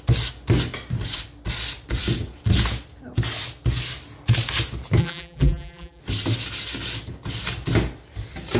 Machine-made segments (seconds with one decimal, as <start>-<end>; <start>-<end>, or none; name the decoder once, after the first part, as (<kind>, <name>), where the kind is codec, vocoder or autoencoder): 5.0-6.0 (vocoder, BigVGAN v2)